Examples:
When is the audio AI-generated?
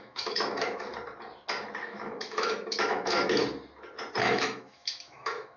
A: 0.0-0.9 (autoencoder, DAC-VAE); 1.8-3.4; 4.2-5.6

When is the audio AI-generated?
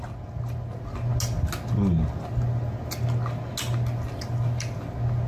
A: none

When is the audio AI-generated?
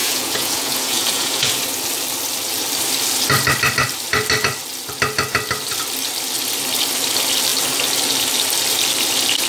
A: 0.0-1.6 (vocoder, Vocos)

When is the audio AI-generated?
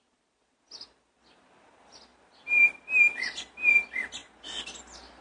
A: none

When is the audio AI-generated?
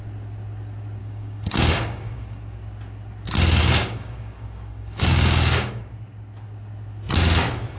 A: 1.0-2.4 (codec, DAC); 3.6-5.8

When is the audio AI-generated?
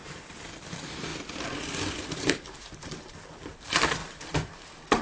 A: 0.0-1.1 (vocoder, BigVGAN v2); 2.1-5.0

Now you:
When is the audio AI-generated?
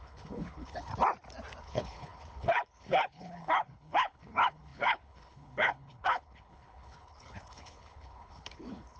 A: 0.0-0.9 (codec, HILCodec); 1.6-9.0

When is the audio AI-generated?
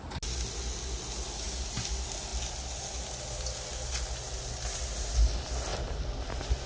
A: none